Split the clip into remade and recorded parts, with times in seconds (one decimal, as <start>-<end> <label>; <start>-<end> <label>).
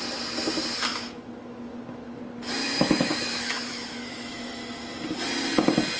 0.0-0.9 recorded; 0.9-2.2 remade; 2.2-2.6 recorded; 2.6-4.6 remade; 4.6-6.0 recorded